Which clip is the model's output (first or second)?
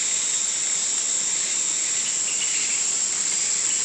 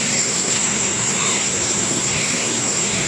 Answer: second